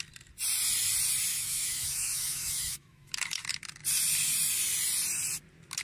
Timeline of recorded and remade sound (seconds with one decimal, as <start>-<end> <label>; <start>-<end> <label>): 0.0-1.3 recorded; 1.3-3.1 remade; 3.1-5.8 recorded